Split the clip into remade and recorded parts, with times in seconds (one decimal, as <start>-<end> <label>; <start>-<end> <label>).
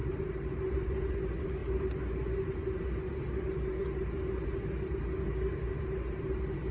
0.0-1.2 remade; 1.2-6.7 recorded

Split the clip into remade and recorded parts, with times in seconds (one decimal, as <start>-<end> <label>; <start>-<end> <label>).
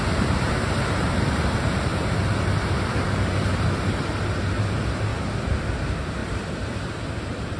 0.0-1.9 remade; 1.9-2.5 recorded; 2.5-5.1 remade; 5.1-5.8 recorded; 5.8-7.6 remade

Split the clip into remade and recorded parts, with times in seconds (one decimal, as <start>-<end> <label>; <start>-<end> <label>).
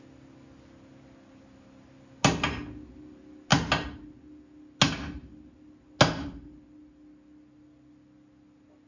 0.0-8.9 recorded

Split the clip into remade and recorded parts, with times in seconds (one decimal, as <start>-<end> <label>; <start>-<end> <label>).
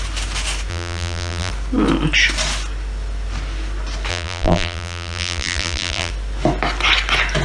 0.0-0.7 recorded; 0.7-1.5 remade; 1.5-4.1 recorded; 4.1-6.1 remade; 6.1-7.4 recorded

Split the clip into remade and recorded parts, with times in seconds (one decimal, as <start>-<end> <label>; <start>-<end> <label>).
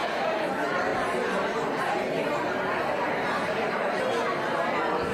0.0-0.5 remade; 0.5-0.9 recorded; 0.9-4.0 remade; 4.0-5.1 recorded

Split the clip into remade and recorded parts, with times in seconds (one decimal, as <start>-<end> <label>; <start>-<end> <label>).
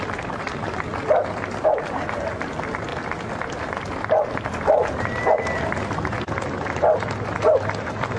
0.0-8.2 recorded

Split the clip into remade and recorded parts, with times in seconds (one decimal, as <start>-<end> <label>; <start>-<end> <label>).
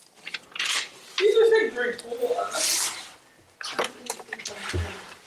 0.0-1.2 remade; 1.2-3.6 recorded; 3.6-5.3 remade